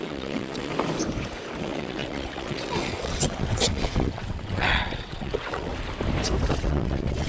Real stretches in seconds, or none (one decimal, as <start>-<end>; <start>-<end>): 0.7-1.6; 5.7-6.5